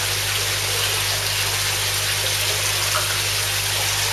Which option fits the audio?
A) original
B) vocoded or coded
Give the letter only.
A